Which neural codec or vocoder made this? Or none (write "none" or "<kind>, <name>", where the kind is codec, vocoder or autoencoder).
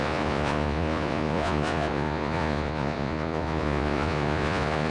vocoder, Vocos